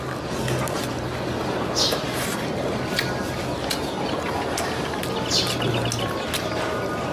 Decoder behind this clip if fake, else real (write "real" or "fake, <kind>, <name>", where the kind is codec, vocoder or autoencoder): real